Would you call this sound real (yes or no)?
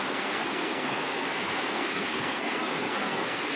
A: no